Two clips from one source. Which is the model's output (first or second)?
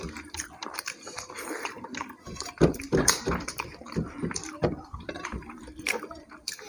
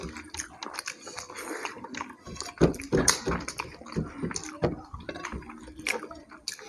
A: first